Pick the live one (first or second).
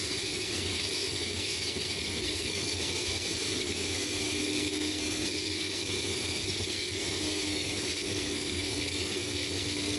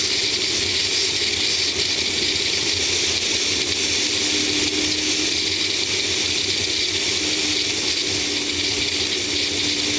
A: second